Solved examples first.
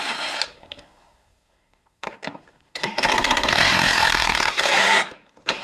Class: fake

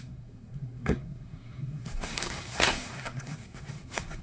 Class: fake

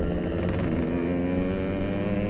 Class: real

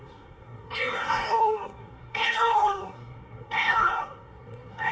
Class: fake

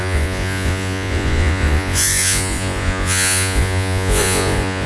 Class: fake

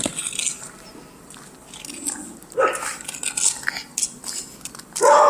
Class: real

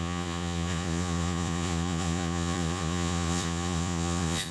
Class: fake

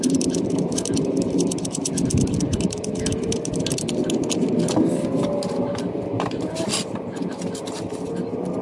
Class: real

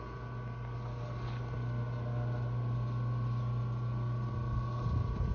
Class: real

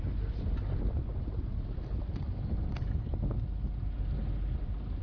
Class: real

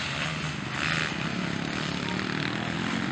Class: real